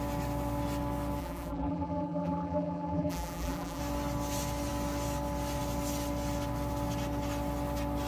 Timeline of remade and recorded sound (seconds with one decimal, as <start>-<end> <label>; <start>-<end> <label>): 0.0-1.2 recorded; 1.2-3.8 remade; 3.8-8.1 recorded